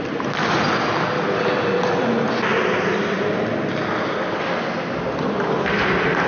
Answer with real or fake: real